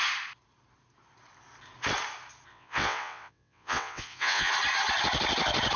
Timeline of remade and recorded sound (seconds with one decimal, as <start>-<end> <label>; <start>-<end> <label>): 0.0-2.5 recorded; 2.5-4.5 remade; 4.5-5.8 recorded